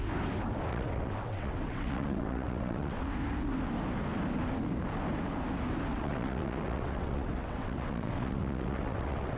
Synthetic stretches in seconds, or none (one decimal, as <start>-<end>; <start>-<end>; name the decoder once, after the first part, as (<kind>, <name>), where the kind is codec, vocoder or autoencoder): 0.7-3.0 (vocoder, WaveNeXt); 5.9-9.4